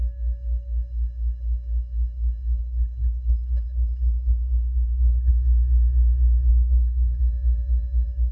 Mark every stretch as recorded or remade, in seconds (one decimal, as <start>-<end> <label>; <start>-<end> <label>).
0.0-2.6 recorded; 2.6-5.3 remade; 5.3-6.5 recorded; 6.5-7.2 remade; 7.2-8.3 recorded